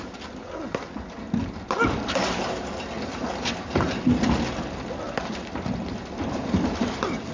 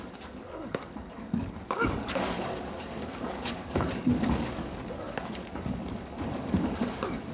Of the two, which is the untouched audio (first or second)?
first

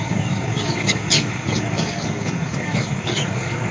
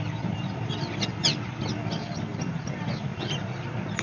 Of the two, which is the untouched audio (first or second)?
second